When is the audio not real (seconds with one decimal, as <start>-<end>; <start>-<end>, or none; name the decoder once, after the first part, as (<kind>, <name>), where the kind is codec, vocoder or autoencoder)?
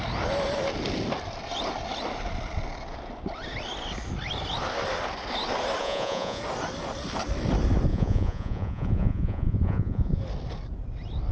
5.8-6.4 (vocoder, Vocos); 7.9-10.2